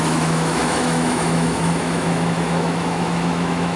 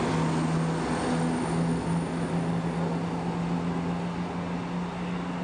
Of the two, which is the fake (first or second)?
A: first